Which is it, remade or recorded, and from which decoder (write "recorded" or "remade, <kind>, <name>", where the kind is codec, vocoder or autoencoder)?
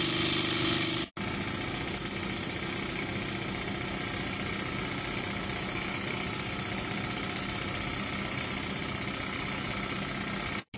recorded